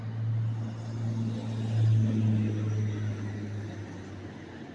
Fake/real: real